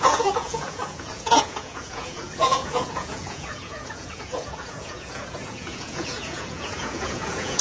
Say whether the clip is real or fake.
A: fake